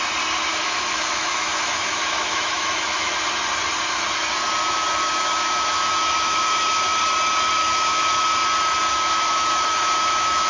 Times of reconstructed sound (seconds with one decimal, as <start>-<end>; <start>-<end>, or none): 0.5-3.1; 4.6-7.0; 7.6-8.3; 8.9-10.5